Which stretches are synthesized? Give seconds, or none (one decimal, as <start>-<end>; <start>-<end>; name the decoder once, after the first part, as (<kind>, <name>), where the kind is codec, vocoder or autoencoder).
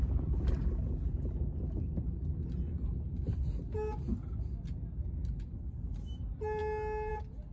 none